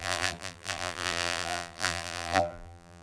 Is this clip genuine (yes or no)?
no